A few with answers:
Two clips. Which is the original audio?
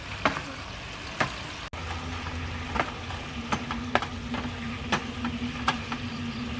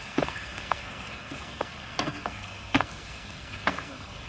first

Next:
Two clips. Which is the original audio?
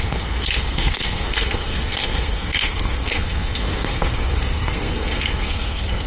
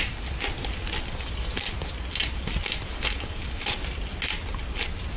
second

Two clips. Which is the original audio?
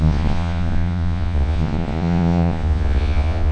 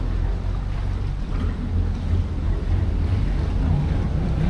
second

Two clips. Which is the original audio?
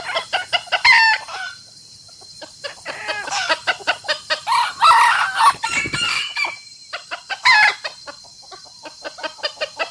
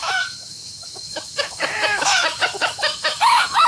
first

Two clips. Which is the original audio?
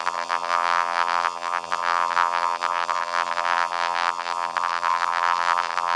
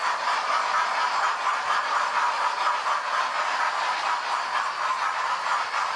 second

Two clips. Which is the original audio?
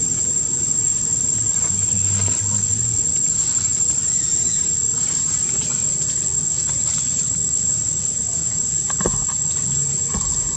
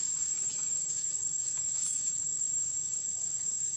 first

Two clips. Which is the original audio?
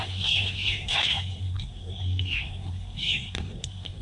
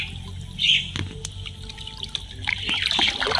second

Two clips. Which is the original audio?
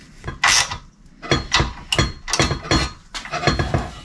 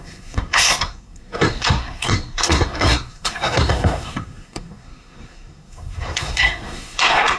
first